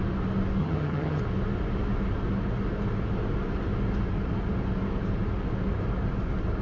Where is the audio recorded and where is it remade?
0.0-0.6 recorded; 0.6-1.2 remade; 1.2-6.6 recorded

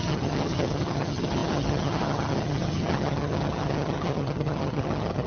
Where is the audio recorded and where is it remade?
0.0-5.3 remade

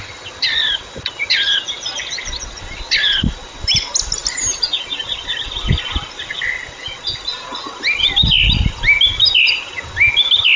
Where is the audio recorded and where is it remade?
0.0-10.6 recorded

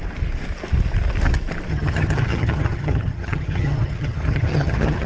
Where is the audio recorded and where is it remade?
0.0-1.7 recorded; 1.7-5.1 remade